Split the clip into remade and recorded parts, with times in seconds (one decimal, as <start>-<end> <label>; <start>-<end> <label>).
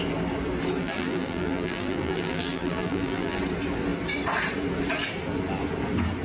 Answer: 0.0-0.8 recorded; 0.8-3.4 remade; 3.4-6.2 recorded